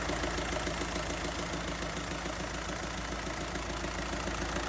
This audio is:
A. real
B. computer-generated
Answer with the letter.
A